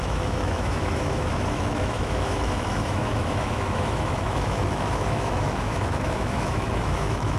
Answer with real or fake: fake